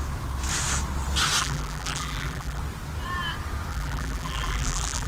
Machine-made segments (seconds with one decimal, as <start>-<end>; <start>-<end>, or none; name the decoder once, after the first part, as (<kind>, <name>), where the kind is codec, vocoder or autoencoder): 1.4-2.6 (vocoder, BigVGAN v2); 3.7-5.1